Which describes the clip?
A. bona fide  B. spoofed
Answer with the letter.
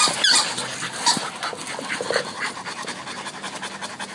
A